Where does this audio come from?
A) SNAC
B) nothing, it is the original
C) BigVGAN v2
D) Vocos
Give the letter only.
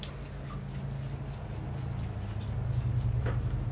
B